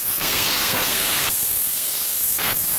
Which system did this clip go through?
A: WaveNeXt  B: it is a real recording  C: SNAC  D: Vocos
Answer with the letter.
C